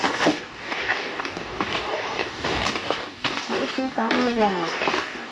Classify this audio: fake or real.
fake